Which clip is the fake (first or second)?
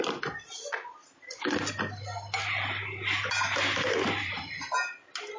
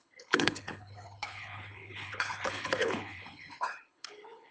second